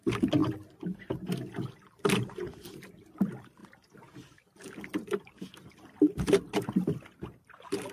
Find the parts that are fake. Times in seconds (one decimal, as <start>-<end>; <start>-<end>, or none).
none

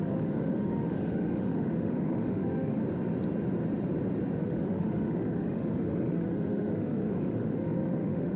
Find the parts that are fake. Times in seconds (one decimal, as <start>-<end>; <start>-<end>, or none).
0.0-2.8; 4.4-8.4

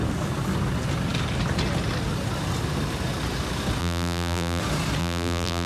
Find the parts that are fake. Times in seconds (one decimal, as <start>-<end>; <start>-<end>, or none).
3.8-4.6; 5.0-5.7

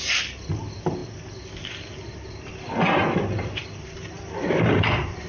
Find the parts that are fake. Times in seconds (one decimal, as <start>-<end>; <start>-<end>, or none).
none

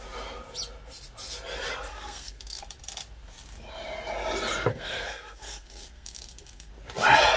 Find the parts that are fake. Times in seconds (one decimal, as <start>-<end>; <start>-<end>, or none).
1.9-2.6; 4.7-6.7

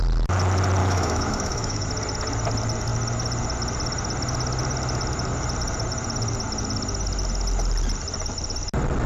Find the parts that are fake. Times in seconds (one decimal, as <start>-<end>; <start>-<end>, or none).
0.8-1.9